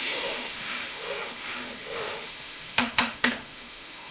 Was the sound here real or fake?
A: fake